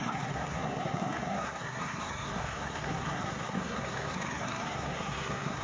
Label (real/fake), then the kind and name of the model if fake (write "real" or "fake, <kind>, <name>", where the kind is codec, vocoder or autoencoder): fake, codec, SNAC